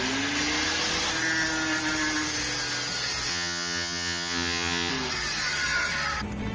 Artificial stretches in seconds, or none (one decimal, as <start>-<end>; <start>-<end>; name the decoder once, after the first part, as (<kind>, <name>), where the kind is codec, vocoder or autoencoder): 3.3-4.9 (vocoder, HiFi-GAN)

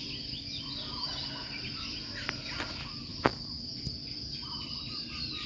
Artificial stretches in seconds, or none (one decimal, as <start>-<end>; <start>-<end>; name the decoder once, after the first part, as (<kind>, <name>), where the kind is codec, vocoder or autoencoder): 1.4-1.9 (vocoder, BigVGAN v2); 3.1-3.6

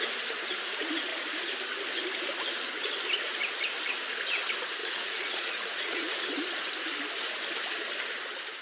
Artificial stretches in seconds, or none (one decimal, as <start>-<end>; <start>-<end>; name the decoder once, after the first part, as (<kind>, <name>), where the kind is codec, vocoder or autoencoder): 4.8-6.2 (vocoder, Vocos)

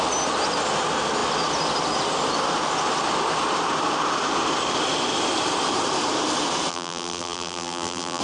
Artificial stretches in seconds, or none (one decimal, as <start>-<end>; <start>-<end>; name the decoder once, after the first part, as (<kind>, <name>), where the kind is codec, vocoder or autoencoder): 6.7-8.2 (vocoder, BigVGAN v2)

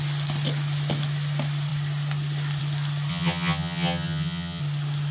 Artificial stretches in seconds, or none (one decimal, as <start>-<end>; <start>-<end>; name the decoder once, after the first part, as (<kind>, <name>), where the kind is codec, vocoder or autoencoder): 3.1-4.6 (vocoder, HiFi-GAN)

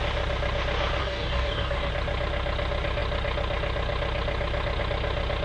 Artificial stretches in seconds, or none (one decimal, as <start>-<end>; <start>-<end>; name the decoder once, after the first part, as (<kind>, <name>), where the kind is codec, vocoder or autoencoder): 1.0-1.9 (codec, DAC)

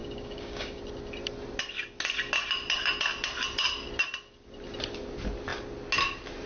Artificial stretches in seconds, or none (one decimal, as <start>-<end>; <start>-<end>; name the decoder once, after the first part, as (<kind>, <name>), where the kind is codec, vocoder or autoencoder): 0.0-0.8 (codec, DAC)